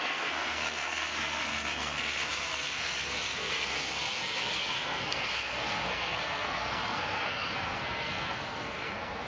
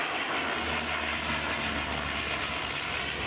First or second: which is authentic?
second